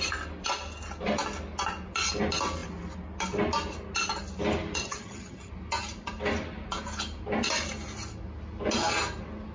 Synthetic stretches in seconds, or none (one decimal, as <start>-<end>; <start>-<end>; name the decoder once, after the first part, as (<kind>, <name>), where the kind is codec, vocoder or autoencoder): 4.8-5.5 (vocoder, HiFi-GAN)